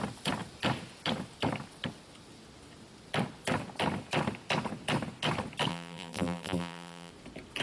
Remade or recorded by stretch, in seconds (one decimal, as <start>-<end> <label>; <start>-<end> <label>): 0.0-5.7 recorded; 5.7-7.1 remade; 7.1-7.6 recorded